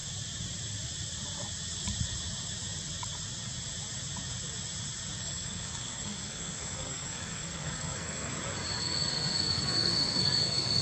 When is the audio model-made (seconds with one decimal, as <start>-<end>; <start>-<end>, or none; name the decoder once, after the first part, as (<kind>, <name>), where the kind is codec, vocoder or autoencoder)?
5.2-8.3 (codec, SNAC); 8.8-10.8